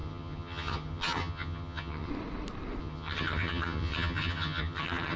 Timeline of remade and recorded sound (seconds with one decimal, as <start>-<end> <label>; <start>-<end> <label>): 0.0-2.1 remade; 2.1-2.8 recorded; 2.8-5.2 remade